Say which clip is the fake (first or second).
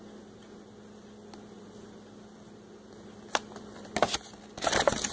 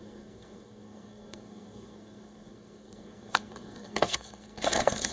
second